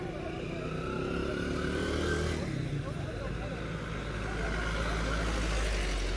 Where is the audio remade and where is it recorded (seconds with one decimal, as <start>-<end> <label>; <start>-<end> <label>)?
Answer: 0.0-6.2 recorded